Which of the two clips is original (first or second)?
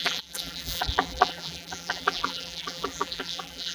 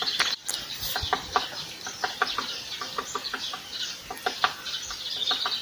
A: second